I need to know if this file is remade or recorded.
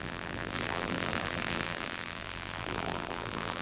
remade